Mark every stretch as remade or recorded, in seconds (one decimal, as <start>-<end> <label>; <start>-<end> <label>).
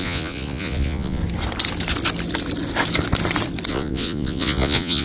0.0-1.2 remade; 1.2-3.7 recorded; 3.7-5.0 remade